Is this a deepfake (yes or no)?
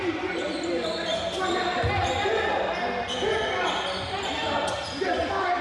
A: no